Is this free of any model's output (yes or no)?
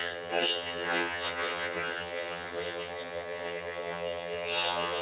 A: no